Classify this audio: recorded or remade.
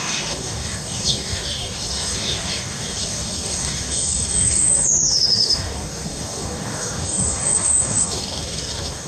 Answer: remade